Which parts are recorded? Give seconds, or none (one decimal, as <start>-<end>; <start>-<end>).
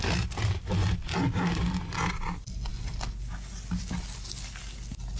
0.0-5.2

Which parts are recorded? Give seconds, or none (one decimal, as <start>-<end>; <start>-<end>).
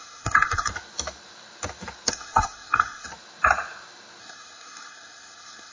0.7-2.1; 3.1-4.2